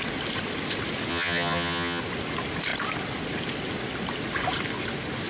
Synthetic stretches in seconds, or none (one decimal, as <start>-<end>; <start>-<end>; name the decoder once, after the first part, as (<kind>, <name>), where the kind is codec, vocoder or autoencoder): 1.1-2.0 (vocoder, HiFi-GAN)